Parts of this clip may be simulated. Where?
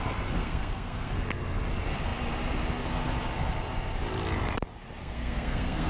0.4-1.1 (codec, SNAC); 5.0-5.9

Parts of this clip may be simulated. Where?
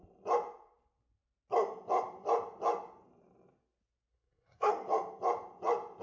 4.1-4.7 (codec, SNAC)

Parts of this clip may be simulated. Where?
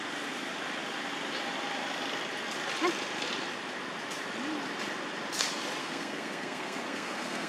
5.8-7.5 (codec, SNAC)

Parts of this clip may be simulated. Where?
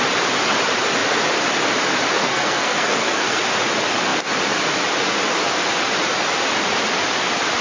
2.2-3.4 (codec, SNAC)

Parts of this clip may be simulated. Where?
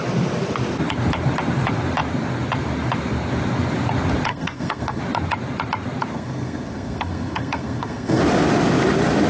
4.3-5.0 (codec, SNAC); 6.1-8.2